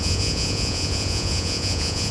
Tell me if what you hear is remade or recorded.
remade